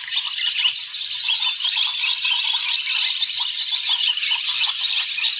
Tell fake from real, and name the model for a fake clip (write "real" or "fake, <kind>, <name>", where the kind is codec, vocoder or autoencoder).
real